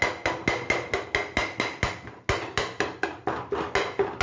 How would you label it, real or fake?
real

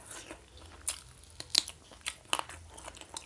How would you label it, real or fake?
real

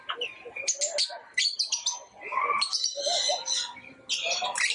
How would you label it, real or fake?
real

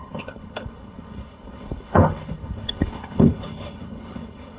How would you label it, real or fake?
fake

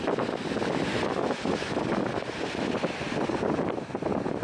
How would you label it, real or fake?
real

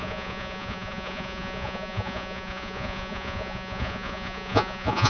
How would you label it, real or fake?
fake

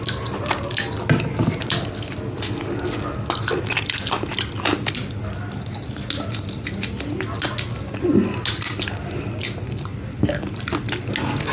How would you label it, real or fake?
real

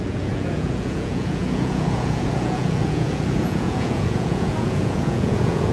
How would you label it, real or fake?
fake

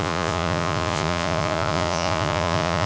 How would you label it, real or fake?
fake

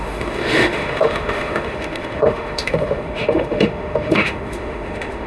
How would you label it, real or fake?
fake